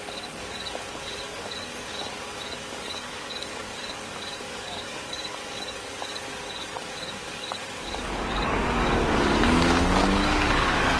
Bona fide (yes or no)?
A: no